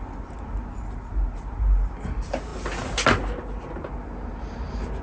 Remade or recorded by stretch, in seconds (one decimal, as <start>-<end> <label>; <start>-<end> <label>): 0.0-5.0 recorded